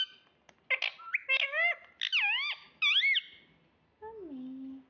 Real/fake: real